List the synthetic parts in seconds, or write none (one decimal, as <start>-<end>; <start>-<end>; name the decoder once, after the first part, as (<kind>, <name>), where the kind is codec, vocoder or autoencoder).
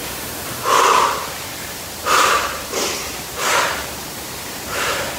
0.0-5.2 (vocoder, BigVGAN v2)